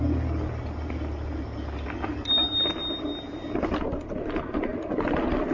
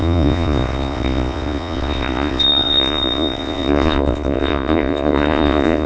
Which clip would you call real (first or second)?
first